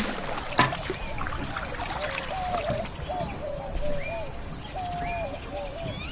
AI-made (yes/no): no